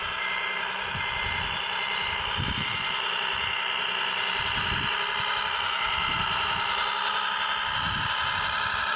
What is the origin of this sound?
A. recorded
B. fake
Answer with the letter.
A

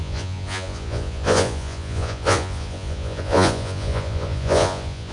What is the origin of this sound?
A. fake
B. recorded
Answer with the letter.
A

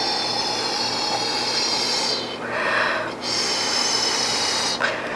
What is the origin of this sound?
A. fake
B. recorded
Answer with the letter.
B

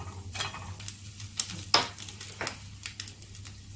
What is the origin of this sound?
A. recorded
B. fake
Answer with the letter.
A